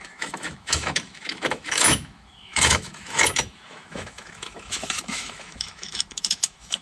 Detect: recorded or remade remade